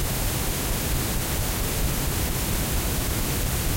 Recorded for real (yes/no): yes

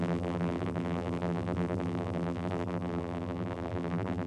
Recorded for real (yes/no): no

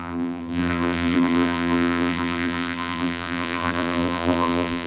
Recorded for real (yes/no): no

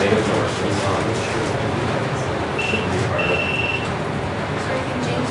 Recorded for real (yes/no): yes